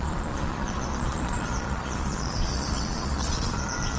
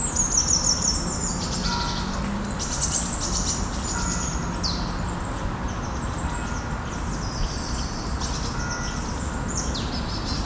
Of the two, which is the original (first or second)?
second